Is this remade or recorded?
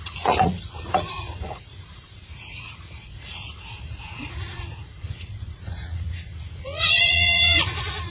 remade